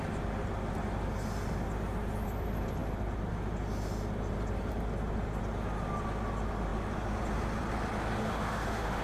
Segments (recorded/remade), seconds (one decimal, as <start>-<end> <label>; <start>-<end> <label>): 0.0-8.2 recorded; 8.2-9.0 remade